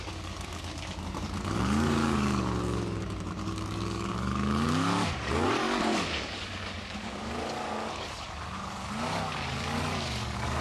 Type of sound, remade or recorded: remade